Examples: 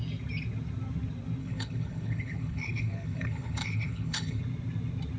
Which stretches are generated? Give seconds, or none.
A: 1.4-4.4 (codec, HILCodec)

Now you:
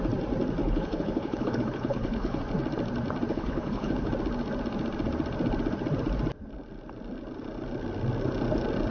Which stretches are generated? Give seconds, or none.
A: 0.6-2.4 (codec, HILCodec); 3.3-4.1